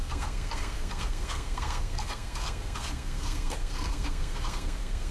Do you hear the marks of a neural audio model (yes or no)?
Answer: yes